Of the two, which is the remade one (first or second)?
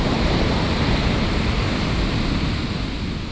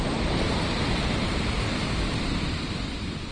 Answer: second